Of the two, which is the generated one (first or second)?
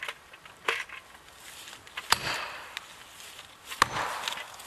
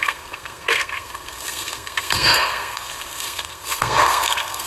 second